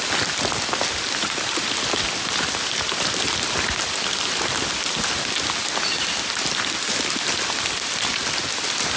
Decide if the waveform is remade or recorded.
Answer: recorded